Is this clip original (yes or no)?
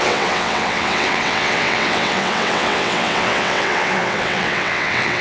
no